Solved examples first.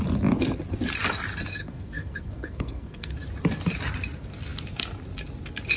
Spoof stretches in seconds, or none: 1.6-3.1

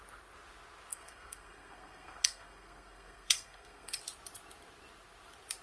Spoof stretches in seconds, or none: 0.9-4.0

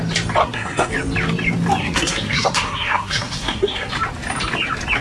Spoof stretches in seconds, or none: 0.4-0.9; 1.8-3.9

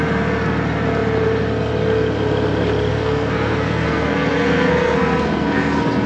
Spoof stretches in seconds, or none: 2.9-6.1

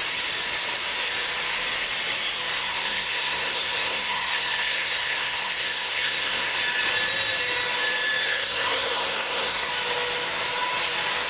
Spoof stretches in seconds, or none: 2.6-6.6; 8.2-9.7

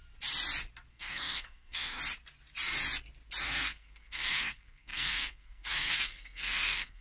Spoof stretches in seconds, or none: 0.9-2.0; 3.4-7.0